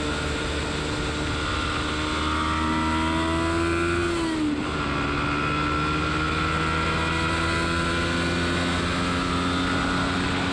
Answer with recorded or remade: recorded